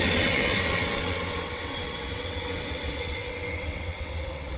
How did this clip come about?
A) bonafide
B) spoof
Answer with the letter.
B